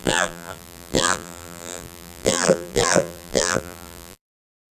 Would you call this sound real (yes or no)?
no